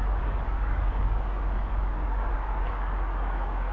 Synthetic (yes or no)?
yes